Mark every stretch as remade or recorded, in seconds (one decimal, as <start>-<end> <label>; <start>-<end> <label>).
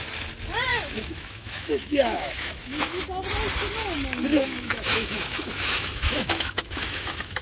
0.0-0.7 recorded; 0.7-3.0 remade; 3.0-4.3 recorded; 4.3-7.4 remade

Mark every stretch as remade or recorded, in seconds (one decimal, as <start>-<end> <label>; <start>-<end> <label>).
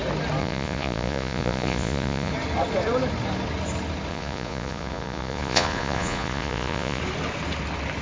0.0-0.4 recorded; 0.4-2.3 remade; 2.3-4.1 recorded; 4.1-7.0 remade; 7.0-8.0 recorded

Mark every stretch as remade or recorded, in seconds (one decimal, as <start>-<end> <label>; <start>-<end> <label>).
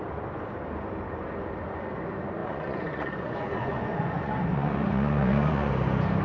0.0-2.4 recorded; 2.4-5.7 remade; 5.7-6.2 recorded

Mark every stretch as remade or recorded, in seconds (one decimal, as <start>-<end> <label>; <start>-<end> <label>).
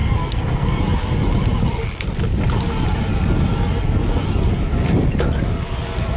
0.0-0.8 remade; 0.8-6.2 recorded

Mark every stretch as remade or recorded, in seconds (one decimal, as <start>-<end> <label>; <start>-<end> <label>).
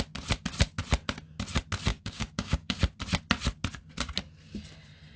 0.0-1.9 recorded; 1.9-2.8 remade; 2.8-5.2 recorded